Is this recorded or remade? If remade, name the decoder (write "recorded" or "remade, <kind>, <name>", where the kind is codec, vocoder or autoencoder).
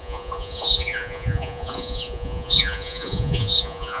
remade, vocoder, Vocos